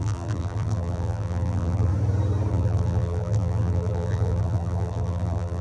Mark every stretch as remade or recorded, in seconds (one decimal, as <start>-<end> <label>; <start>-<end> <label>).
0.0-1.9 remade; 1.9-2.5 recorded; 2.5-5.6 remade